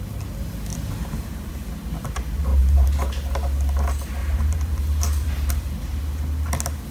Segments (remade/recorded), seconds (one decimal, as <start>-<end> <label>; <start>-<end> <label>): 0.0-0.7 recorded; 0.7-1.5 remade; 1.5-2.5 recorded; 2.5-3.1 remade; 3.1-4.2 recorded; 4.2-6.0 remade; 6.0-6.9 recorded